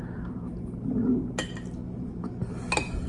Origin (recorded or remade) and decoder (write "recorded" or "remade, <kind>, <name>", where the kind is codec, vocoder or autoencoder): recorded